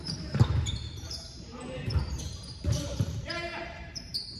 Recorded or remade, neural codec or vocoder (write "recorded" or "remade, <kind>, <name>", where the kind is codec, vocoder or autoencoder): remade, vocoder, BigVGAN v2